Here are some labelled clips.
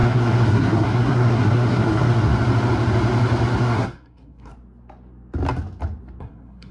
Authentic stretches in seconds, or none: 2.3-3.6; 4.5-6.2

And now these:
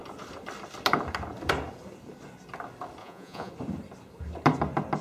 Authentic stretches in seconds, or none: 0.0-3.0; 3.5-5.0

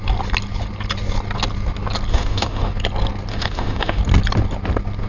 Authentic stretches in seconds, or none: 0.0-2.1; 2.7-3.3; 4.0-5.1

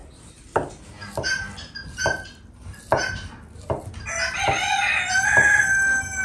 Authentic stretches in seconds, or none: 0.0-6.2

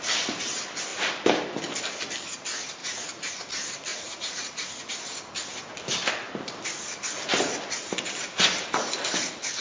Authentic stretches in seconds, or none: 0.0-2.8; 3.3-3.9; 4.8-9.6

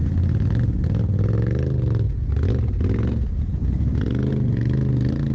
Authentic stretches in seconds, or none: 0.0-5.3

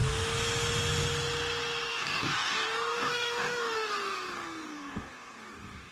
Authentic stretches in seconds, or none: 0.0-1.9

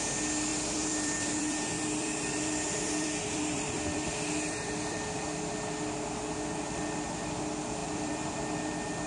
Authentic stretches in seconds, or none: 0.0-0.5; 5.5-7.8; 8.7-9.1